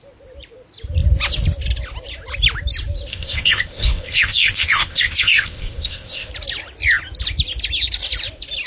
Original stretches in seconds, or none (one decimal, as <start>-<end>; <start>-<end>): 0.0-3.1; 6.3-8.7